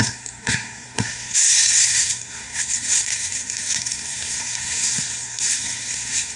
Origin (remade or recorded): remade